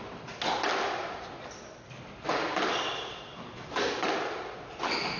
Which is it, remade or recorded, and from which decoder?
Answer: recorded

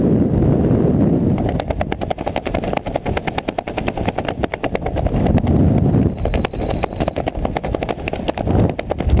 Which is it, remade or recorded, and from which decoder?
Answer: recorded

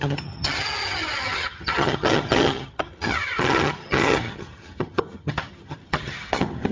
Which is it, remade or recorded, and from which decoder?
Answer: remade, vocoder, HiFi-GAN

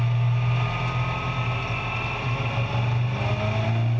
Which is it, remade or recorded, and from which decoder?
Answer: recorded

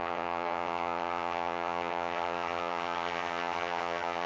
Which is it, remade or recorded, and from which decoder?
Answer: remade, vocoder, HiFi-GAN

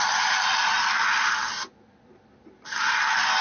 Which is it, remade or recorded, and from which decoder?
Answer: recorded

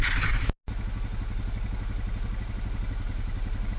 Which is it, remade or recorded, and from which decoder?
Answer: recorded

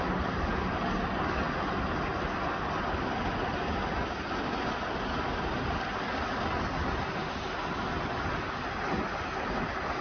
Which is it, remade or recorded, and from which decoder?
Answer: recorded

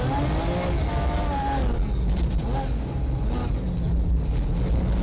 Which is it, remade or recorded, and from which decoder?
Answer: recorded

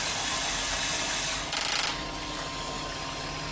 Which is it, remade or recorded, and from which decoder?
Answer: recorded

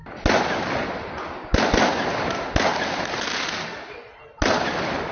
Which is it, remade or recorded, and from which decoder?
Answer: recorded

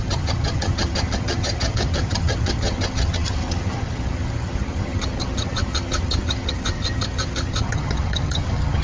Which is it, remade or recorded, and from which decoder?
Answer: remade, vocoder, HiFi-GAN